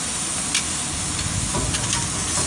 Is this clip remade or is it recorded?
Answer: recorded